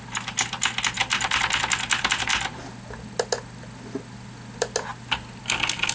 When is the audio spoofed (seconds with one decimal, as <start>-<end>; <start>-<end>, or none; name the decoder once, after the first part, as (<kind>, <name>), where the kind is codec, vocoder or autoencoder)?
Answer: none